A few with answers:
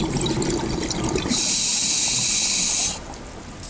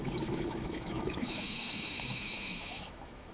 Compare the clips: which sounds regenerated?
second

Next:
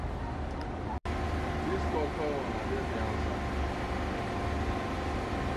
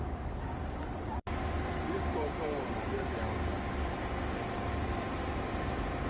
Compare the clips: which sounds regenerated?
second